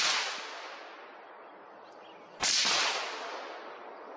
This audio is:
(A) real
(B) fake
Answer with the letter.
A